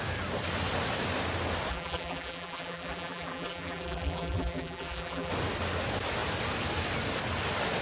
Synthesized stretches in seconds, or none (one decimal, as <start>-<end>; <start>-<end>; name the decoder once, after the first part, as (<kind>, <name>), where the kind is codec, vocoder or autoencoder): 1.7-5.3 (vocoder, BigVGAN v2)